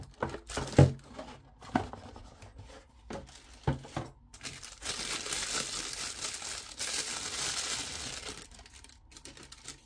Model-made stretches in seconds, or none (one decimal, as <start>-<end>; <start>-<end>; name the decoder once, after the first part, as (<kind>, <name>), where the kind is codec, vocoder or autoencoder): none

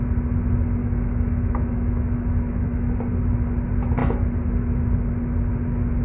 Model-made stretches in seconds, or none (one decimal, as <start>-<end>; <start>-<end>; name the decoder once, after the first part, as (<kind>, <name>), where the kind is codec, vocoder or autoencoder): 0.8-2.9 (autoencoder, DAC-VAE)

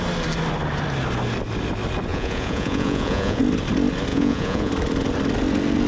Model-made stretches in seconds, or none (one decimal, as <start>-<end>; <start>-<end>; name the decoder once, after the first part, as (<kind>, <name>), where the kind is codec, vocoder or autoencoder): 2.1-3.4 (vocoder, Vocos); 4.1-4.7

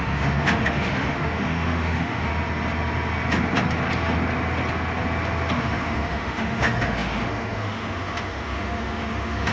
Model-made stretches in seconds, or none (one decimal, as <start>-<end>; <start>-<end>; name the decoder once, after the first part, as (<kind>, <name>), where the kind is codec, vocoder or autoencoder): 0.0-2.3 (autoencoder, DAC-VAE); 5.5-9.5

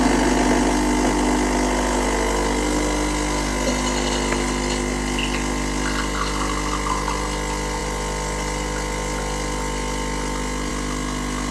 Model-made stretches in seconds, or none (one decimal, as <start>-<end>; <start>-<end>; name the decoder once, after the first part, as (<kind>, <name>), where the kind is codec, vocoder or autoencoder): none

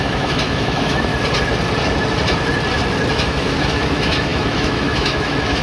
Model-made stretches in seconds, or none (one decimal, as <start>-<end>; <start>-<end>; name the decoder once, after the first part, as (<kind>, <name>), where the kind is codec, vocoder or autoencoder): 0.0-1.1 (autoencoder, DAC-VAE); 3.1-5.6

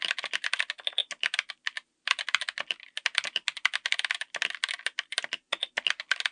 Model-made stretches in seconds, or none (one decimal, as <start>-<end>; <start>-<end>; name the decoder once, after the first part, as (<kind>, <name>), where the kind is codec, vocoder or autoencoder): none

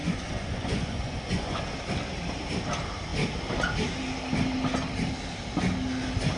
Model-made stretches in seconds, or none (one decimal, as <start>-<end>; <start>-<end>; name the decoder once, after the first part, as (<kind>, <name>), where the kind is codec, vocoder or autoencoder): 0.0-1.6 (vocoder, Vocos)